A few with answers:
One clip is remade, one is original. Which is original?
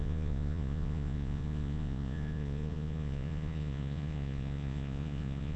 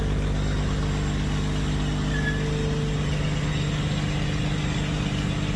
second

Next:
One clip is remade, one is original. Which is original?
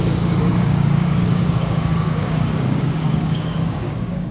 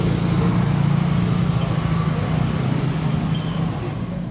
second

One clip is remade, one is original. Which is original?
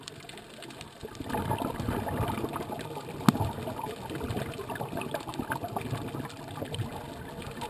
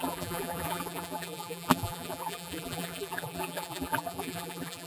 first